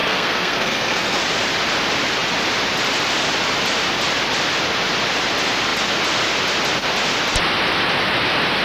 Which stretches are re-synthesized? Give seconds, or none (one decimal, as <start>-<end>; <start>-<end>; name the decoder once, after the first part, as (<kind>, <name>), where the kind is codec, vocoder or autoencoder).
0.0-1.2 (codec, SNAC)